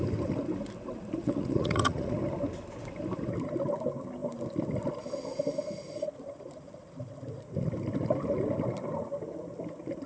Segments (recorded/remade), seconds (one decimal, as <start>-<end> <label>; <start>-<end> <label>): 0.0-1.2 recorded; 1.2-2.2 remade; 2.2-10.1 recorded